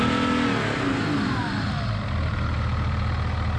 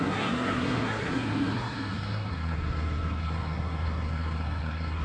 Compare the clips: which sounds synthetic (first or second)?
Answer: second